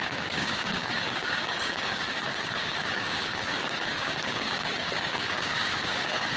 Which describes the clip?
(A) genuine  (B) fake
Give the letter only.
B